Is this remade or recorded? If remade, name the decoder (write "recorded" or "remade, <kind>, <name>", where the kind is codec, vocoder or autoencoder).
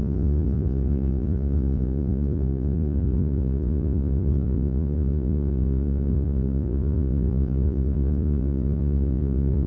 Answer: remade, vocoder, Vocos